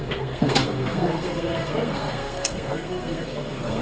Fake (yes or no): yes